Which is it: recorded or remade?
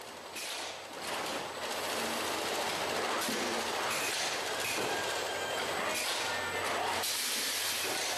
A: recorded